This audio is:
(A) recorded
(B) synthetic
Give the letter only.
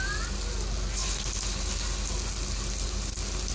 A